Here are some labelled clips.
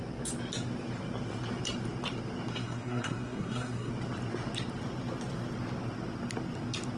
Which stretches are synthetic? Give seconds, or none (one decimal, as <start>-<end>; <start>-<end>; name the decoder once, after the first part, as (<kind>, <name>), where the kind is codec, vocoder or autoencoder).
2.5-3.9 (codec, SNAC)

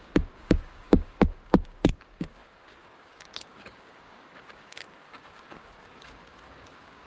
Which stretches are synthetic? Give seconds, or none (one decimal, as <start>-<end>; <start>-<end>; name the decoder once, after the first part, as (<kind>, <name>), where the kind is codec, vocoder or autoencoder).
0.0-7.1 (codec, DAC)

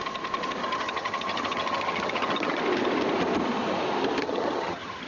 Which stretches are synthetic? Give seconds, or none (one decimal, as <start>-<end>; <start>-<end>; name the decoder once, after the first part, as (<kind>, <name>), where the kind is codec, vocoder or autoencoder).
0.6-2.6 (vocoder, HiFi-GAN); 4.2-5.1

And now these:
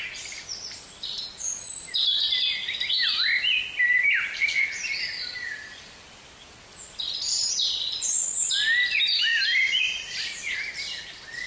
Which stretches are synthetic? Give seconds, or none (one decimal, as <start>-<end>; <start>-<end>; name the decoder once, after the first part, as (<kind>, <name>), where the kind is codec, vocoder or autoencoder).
0.0-9.3 (vocoder, BigVGAN v2); 9.8-11.5

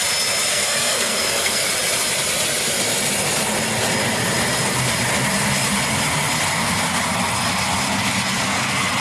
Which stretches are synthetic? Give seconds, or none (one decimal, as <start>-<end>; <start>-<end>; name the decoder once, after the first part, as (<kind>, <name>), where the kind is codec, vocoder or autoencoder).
0.5-1.7 (codec, SNAC)